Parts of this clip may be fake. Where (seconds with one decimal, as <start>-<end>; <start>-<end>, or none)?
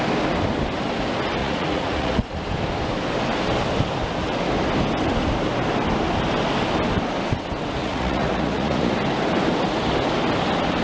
1.4-2.4; 7.8-8.9